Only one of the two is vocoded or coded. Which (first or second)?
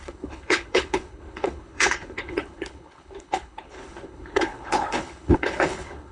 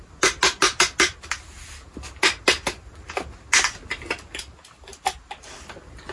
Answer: first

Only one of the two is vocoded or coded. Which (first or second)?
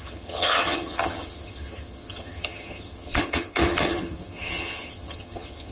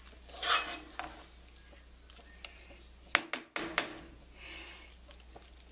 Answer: first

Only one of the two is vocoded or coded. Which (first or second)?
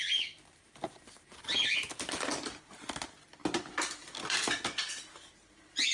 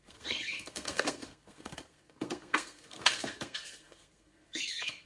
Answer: second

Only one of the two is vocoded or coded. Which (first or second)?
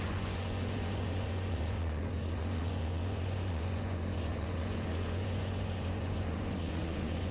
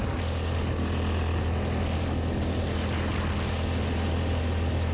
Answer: first